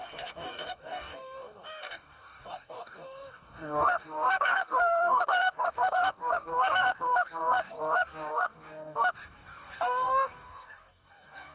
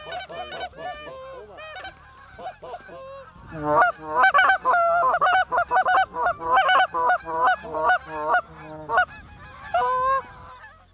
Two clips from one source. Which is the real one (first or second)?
second